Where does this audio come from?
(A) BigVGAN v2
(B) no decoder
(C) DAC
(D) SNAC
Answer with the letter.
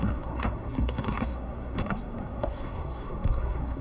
D